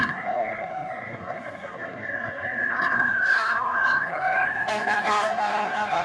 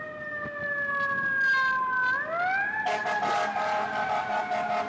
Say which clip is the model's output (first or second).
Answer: first